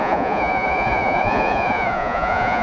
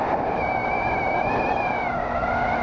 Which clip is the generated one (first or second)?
first